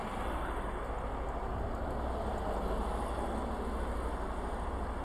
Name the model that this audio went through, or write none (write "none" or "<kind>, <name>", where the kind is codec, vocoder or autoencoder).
none